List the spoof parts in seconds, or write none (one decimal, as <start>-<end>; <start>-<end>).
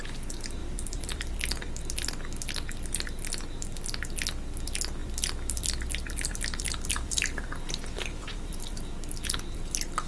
0.6-1.7; 5.0-8.9